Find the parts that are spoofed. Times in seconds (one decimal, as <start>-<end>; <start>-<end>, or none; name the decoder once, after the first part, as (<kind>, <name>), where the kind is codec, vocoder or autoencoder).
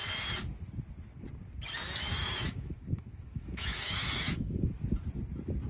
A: 2.2-4.8 (autoencoder, DAC-VAE)